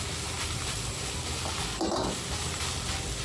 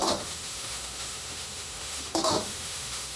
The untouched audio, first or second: first